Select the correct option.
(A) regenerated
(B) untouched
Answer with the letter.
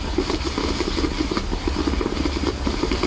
B